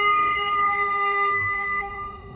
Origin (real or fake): fake